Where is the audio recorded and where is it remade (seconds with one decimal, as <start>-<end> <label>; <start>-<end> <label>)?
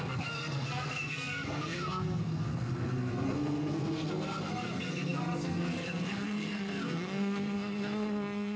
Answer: 0.0-8.6 remade